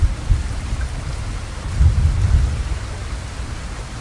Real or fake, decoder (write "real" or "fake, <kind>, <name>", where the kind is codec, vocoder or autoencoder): real